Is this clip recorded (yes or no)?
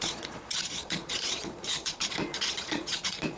no